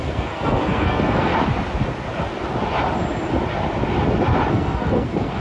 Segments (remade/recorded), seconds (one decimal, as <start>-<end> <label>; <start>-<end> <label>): 0.0-1.3 remade; 1.3-4.5 recorded; 4.5-5.4 remade